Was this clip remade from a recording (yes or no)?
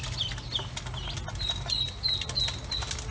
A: no